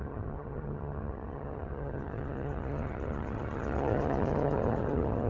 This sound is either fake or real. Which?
fake